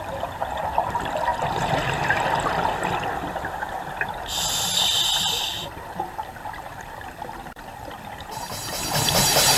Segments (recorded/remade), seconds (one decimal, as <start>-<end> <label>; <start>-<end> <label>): 0.0-9.6 recorded